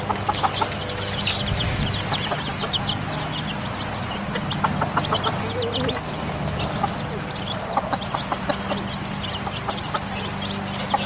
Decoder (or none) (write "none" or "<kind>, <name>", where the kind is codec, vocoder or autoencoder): none